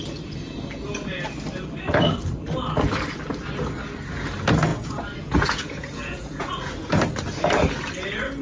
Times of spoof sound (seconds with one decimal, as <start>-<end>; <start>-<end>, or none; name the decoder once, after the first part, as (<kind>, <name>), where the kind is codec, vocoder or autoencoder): 4.7-6.5 (vocoder, Vocos)